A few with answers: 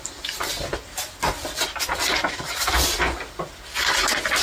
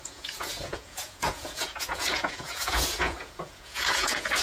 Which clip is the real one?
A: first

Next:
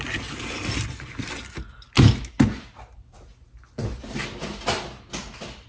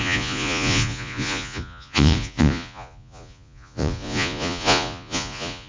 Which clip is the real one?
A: first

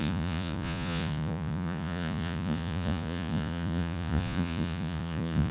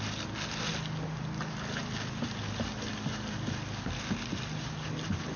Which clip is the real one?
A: second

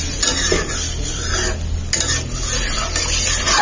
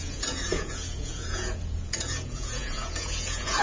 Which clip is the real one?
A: first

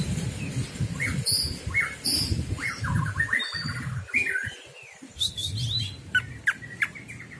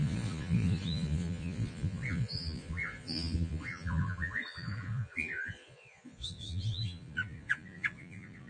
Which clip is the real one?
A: first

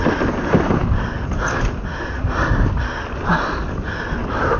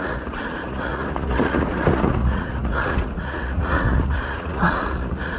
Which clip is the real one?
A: first